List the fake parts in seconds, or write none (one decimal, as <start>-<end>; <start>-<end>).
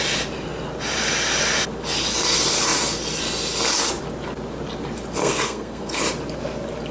5.2-6.0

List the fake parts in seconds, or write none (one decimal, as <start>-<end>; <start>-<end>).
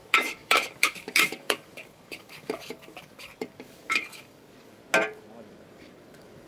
0.0-4.8; 5.7-6.5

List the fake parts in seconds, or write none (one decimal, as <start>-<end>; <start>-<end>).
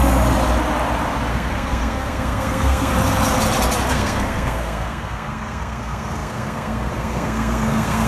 1.3-2.9; 3.9-8.1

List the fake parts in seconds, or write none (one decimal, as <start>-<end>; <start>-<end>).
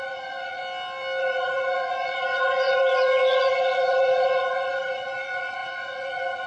0.0-0.6; 1.2-6.5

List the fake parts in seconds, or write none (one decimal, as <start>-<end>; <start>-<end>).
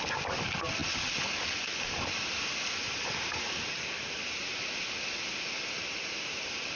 none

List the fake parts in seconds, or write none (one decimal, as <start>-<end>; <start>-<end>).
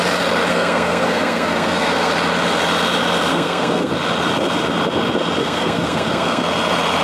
0.5-2.1; 3.3-3.9; 5.4-6.4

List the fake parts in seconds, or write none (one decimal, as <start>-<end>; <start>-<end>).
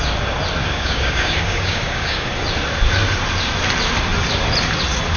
0.6-2.3